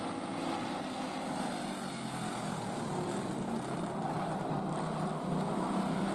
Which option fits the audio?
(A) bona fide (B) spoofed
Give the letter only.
A